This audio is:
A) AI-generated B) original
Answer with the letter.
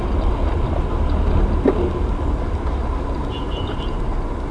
B